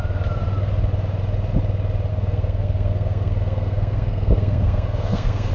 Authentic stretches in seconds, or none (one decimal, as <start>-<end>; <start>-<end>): 0.0-2.1